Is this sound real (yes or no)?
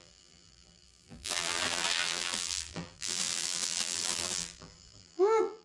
no